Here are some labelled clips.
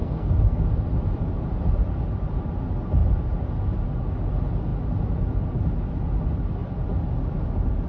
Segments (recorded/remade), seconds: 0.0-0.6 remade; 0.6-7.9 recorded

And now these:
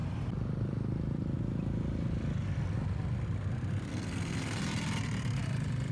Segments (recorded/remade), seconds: 0.0-3.9 recorded; 3.9-4.6 remade; 4.6-5.9 recorded

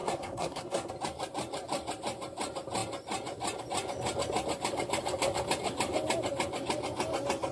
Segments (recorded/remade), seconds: 0.0-0.9 remade; 0.9-7.5 recorded

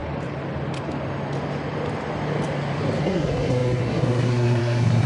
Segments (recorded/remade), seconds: 0.0-3.0 recorded; 3.0-5.1 remade

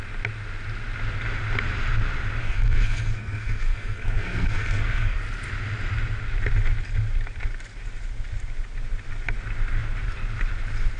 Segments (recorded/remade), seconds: 0.0-2.4 recorded; 2.4-5.2 remade; 5.2-11.0 recorded

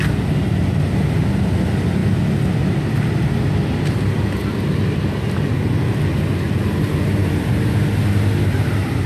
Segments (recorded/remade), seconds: 0.0-9.1 recorded

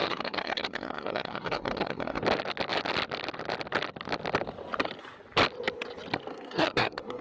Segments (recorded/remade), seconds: 0.0-2.2 remade; 2.2-6.3 recorded; 6.3-7.2 remade